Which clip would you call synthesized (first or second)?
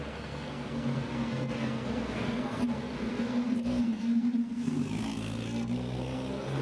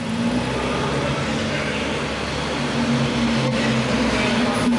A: first